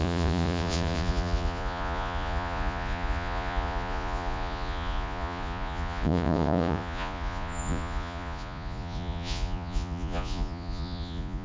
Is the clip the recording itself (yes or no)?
no